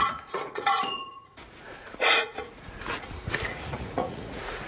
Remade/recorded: remade